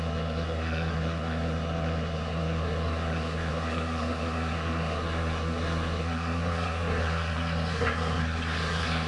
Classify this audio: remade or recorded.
remade